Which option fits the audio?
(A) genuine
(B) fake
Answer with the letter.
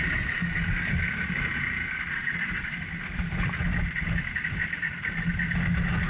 A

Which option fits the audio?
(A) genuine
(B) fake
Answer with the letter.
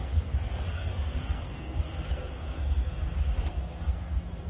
B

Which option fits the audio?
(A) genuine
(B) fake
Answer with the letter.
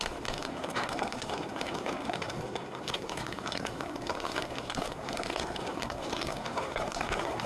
B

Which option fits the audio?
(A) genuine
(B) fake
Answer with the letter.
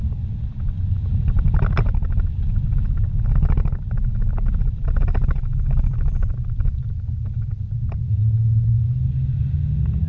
A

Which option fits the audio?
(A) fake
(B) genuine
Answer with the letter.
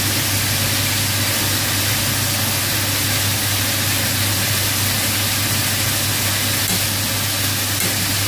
B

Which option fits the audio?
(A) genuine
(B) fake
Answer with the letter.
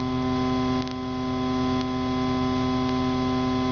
A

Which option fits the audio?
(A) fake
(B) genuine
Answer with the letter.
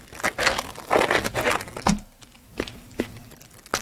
B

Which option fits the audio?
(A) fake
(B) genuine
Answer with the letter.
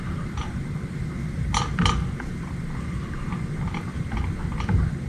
B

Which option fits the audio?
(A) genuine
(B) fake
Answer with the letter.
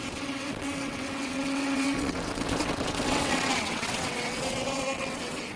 B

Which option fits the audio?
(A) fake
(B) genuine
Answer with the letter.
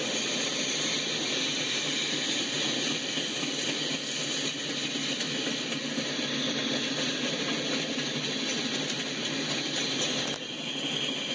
B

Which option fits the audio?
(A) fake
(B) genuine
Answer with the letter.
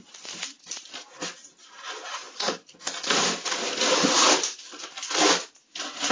B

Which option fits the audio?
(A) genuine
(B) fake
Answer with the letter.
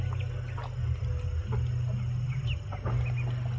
A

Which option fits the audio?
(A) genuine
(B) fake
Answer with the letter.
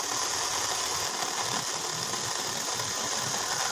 A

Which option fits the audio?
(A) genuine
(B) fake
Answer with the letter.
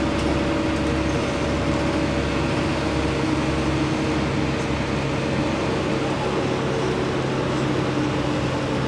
A